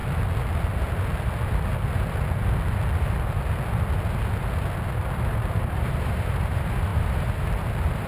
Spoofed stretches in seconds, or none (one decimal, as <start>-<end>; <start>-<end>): 4.9-8.1